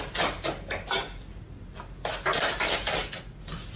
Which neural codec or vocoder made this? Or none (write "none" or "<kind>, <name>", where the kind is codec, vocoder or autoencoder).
none